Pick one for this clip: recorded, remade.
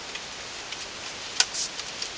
recorded